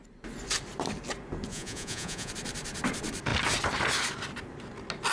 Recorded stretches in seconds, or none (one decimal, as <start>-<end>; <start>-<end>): 0.0-1.5; 2.3-5.1